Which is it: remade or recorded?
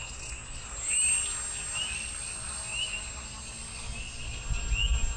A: recorded